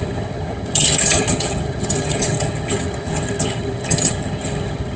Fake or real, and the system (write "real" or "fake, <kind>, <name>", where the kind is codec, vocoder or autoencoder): fake, vocoder, HiFi-GAN